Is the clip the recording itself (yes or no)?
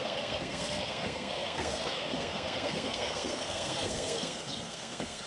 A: no